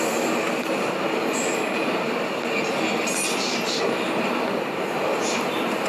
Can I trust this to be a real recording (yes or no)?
yes